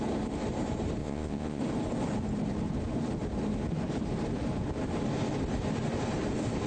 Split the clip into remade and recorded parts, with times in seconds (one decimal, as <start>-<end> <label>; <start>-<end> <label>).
0.0-1.0 recorded; 1.0-1.6 remade; 1.6-6.7 recorded

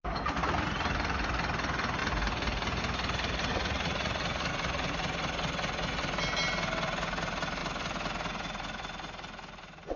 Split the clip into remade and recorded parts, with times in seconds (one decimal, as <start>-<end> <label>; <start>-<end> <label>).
0.0-3.5 recorded; 3.5-4.5 remade; 4.5-10.0 recorded

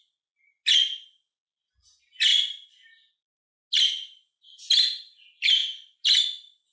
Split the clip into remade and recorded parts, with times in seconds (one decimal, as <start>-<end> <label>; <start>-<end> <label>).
0.0-6.7 recorded